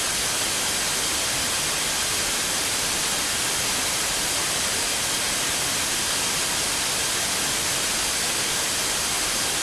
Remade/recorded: recorded